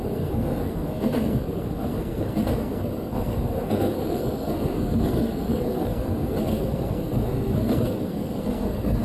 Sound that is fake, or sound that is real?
fake